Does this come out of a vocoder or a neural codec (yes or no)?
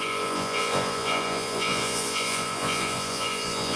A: yes